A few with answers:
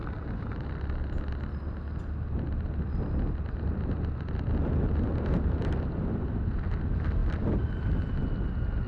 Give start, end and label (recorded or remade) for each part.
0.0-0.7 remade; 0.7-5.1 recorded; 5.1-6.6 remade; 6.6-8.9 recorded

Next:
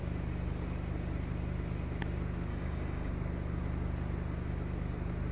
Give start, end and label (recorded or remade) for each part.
0.0-2.5 recorded; 2.5-3.1 remade; 3.1-5.3 recorded

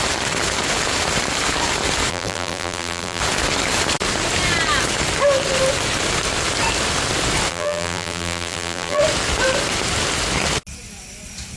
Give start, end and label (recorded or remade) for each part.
0.0-2.1 recorded; 2.1-3.2 remade; 3.2-7.5 recorded; 7.5-9.0 remade; 9.0-11.6 recorded

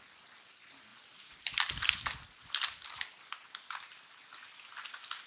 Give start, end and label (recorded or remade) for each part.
0.0-0.9 recorded; 0.9-1.9 remade; 1.9-5.3 recorded

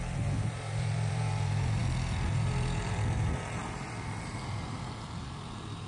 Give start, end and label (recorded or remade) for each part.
0.0-5.9 remade

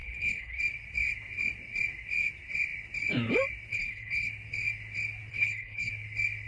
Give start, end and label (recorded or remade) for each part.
0.0-0.6 remade; 0.6-3.7 recorded; 3.7-4.3 remade; 4.3-5.3 recorded; 5.3-5.9 remade; 5.9-6.5 recorded